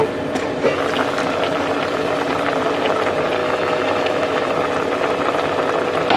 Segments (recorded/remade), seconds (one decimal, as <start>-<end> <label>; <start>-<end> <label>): 0.0-3.4 recorded; 3.4-4.5 remade; 4.5-6.2 recorded